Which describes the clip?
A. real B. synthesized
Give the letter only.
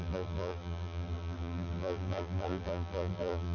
B